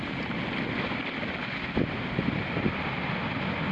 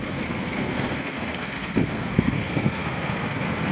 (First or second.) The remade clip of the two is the second